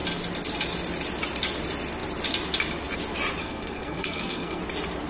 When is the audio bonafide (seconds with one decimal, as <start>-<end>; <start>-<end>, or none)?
0.0-3.4; 4.6-5.1

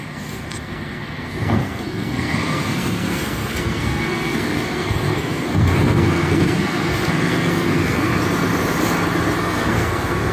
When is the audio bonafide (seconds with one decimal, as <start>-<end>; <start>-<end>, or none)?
8.1-9.4

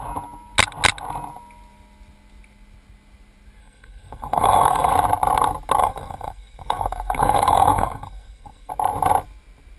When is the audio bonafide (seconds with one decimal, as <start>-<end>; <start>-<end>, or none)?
0.0-3.6; 4.9-5.8; 8.7-9.8

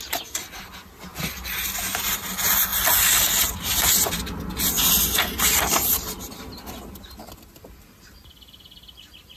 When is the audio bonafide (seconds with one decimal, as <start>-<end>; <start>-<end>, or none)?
0.0-9.4

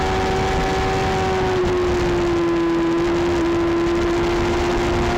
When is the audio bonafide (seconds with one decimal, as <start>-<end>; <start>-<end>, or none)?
0.0-5.2

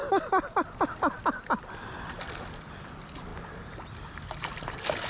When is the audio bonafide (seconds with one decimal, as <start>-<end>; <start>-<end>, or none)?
0.0-5.1

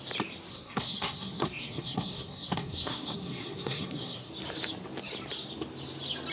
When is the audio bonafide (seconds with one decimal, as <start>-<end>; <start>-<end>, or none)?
0.0-0.5; 4.3-6.3

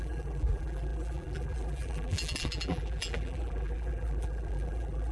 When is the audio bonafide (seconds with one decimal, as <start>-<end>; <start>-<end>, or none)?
none